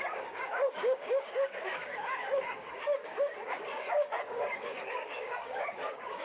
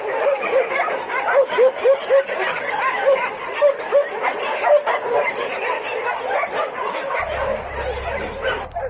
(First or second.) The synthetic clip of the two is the first